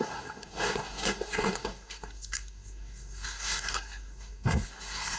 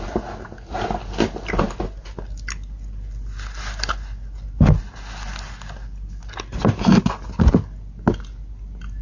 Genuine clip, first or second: second